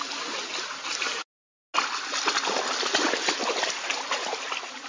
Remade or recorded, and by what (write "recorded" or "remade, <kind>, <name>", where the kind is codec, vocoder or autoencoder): recorded